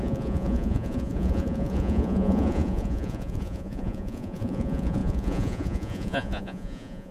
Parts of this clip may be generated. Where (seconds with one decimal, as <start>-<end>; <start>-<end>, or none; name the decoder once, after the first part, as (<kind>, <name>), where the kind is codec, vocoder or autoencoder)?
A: 0.0-7.1 (vocoder, Vocos)